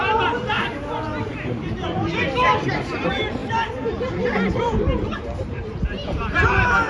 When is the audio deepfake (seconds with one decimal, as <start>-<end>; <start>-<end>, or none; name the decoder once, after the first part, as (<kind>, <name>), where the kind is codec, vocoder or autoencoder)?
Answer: 0.0-2.0 (vocoder, BigVGAN v2); 2.7-6.9